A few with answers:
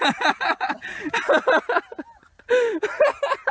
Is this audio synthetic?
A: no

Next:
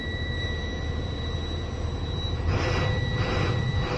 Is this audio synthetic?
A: yes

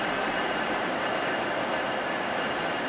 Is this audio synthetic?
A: no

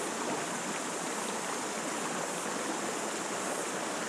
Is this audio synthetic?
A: no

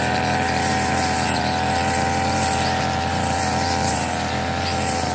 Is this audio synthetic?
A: yes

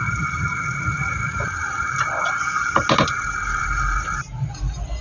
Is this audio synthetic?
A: no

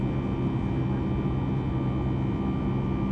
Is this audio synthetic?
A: no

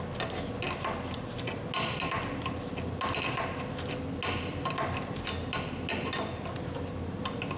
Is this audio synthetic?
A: no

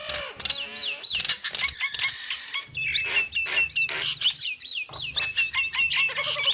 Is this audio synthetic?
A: no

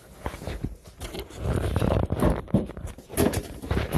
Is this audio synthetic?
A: yes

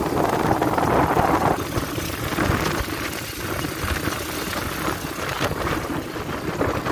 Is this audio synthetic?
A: no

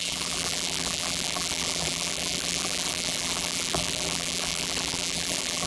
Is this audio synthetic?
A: yes